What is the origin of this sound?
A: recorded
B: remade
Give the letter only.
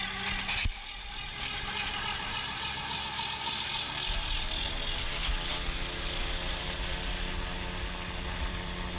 A